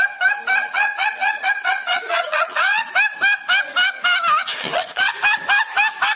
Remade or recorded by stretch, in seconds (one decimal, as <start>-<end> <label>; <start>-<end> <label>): 0.0-0.6 recorded; 0.6-2.9 remade; 2.9-4.4 recorded; 4.4-5.1 remade; 5.1-6.2 recorded